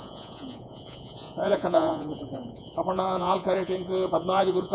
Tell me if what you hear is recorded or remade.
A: remade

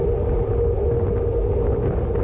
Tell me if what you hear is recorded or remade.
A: recorded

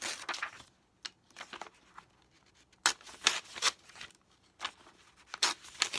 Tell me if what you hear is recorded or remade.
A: recorded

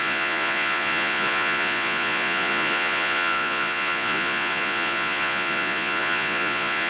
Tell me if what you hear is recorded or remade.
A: remade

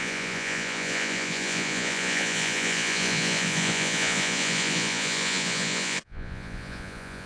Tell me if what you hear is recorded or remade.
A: remade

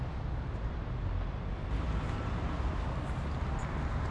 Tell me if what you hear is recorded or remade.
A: recorded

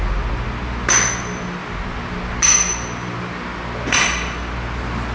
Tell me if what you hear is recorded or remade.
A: recorded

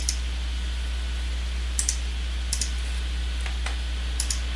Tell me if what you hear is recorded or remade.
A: recorded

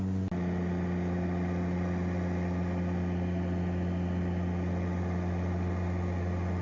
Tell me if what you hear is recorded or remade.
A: recorded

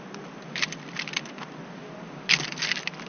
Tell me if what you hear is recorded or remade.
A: recorded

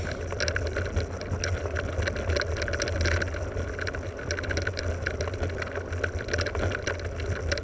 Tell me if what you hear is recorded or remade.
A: recorded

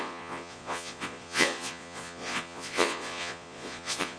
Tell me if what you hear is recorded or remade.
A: remade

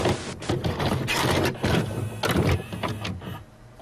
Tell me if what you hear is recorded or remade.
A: recorded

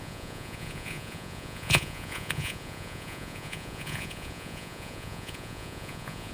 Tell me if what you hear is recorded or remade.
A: remade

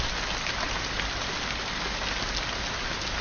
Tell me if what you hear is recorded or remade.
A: recorded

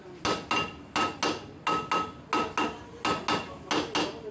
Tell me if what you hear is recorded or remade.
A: recorded